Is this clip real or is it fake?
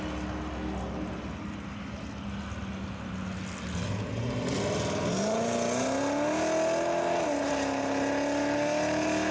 real